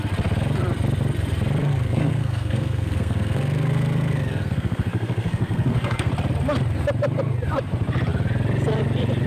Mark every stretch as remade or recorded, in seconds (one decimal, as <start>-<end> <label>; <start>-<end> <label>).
0.0-1.6 recorded; 1.6-6.1 remade; 6.1-9.3 recorded